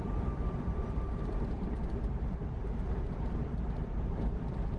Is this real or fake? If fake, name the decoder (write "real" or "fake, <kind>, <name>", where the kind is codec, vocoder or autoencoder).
fake, vocoder, BigVGAN v2